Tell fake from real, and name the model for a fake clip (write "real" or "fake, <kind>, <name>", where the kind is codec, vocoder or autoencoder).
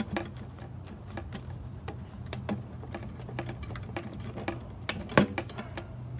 real